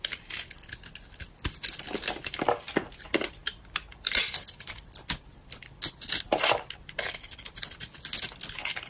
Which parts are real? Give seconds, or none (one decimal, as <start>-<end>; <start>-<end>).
0.0-8.9